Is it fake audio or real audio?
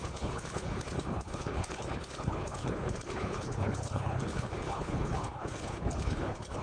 fake